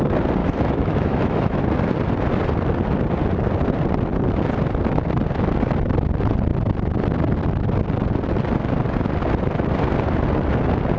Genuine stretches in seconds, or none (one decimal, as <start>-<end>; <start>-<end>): 0.0-0.4; 1.6-11.0